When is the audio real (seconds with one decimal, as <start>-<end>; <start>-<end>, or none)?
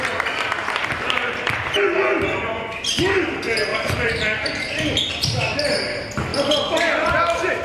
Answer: 0.0-3.7; 5.1-7.6